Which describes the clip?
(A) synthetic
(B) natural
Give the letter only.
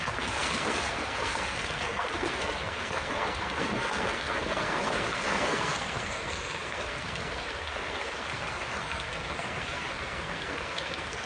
A